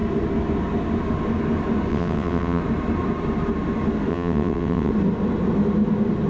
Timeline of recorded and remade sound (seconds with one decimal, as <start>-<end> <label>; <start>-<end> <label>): 0.0-1.9 recorded; 1.9-2.6 remade; 2.6-4.1 recorded; 4.1-4.9 remade; 4.9-6.3 recorded